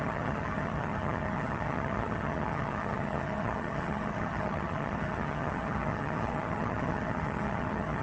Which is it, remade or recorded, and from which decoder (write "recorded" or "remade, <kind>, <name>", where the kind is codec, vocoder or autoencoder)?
remade, vocoder, HiFi-GAN